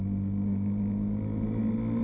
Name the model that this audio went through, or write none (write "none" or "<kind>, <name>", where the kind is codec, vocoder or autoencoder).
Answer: none